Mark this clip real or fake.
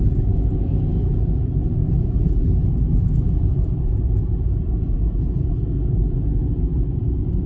fake